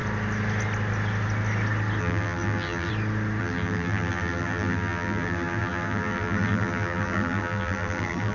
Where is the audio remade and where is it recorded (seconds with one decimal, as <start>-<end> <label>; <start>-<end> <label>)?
0.0-2.0 recorded; 2.0-2.9 remade; 2.9-3.4 recorded; 3.4-8.3 remade